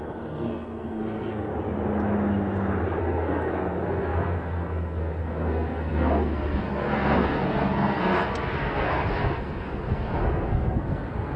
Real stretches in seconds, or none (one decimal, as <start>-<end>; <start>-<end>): 1.5-3.0